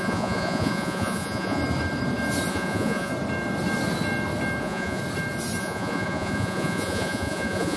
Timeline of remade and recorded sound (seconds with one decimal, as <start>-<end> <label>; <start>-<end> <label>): 0.0-1.6 remade; 1.6-2.5 recorded; 2.5-3.1 remade; 3.1-4.6 recorded; 4.6-5.0 remade; 5.0-5.6 recorded; 5.6-7.8 remade